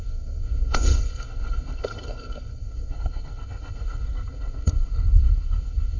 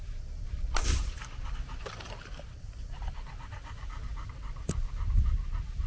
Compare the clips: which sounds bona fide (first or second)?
second